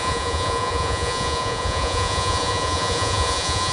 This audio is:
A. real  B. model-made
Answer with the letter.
B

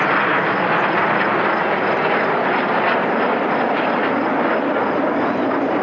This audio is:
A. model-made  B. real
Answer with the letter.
B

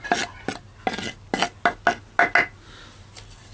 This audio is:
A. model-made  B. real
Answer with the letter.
B